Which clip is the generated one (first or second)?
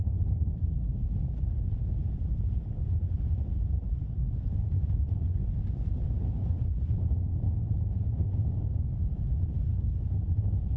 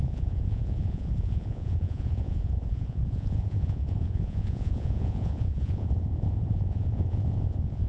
second